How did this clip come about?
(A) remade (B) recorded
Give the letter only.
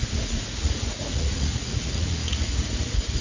A